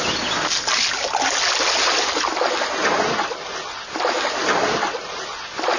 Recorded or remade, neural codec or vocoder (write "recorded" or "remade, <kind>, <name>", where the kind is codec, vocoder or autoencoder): recorded